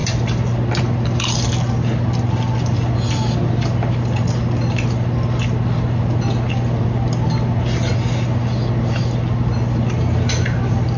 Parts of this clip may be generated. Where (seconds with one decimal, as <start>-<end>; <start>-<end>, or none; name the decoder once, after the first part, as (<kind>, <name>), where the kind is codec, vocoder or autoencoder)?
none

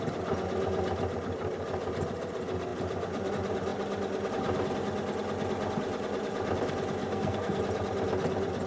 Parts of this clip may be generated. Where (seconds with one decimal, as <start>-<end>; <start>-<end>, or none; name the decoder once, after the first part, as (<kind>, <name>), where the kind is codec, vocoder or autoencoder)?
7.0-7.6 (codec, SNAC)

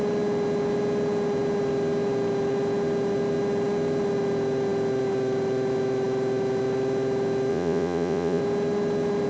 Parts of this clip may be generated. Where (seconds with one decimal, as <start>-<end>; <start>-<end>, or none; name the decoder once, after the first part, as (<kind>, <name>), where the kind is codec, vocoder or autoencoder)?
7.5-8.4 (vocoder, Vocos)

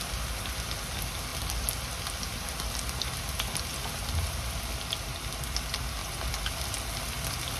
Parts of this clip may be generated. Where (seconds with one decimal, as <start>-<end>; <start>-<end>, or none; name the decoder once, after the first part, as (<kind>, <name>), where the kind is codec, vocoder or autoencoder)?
none